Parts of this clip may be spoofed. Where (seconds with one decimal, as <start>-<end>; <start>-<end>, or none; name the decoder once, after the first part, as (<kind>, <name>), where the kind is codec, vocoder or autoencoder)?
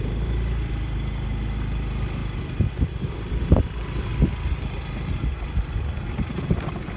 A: 0.0-2.2 (vocoder, BigVGAN v2); 3.1-4.1; 5.8-7.0